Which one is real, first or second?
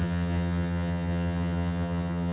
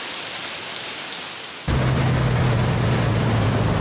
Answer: second